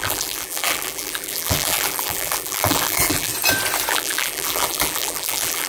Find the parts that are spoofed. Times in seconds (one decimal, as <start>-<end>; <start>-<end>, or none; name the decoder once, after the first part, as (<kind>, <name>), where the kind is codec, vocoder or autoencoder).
0.0-3.3 (vocoder, BigVGAN v2); 3.9-5.7